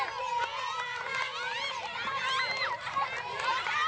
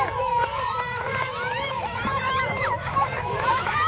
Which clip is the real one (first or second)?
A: first